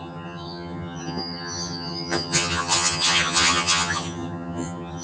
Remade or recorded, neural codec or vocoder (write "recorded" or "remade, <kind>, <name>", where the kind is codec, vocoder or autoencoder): remade, vocoder, HiFi-GAN